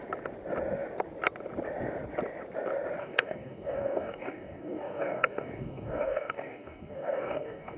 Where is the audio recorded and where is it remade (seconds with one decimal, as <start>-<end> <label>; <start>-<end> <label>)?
0.0-3.0 recorded; 3.0-7.8 remade